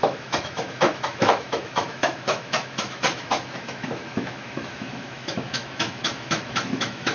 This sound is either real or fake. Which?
fake